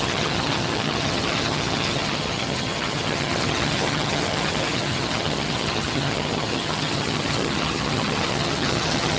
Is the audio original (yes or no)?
no